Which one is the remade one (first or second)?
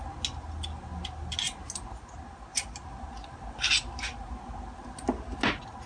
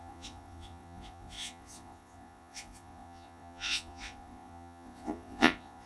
second